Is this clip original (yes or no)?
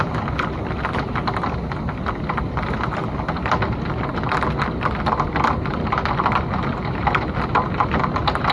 yes